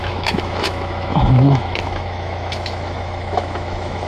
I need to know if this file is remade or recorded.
remade